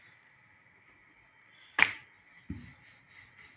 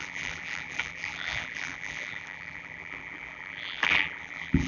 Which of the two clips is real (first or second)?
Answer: first